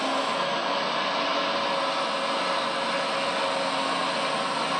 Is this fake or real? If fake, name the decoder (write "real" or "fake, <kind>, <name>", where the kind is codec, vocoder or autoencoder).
real